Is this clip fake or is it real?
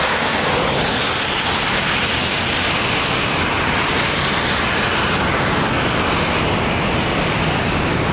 real